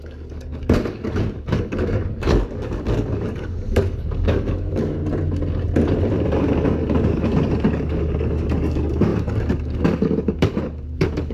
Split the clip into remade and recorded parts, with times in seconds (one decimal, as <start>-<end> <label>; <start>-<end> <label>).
0.0-5.0 remade; 5.0-6.4 recorded; 6.4-11.3 remade